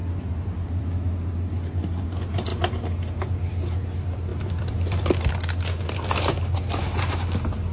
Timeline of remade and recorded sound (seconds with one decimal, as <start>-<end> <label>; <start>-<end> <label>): 0.0-0.9 remade; 0.9-4.3 recorded; 4.3-5.1 remade; 5.1-7.7 recorded